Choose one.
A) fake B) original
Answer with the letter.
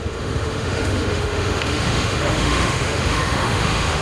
A